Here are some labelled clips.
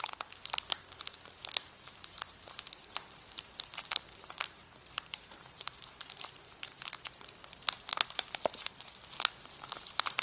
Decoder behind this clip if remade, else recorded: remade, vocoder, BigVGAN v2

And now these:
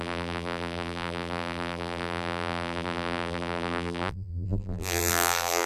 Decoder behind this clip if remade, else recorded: remade, vocoder, BigVGAN v2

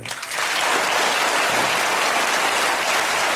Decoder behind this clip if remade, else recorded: recorded